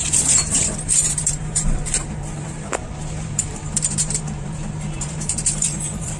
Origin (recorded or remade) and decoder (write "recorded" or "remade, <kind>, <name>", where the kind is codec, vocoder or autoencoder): remade, vocoder, BigVGAN v2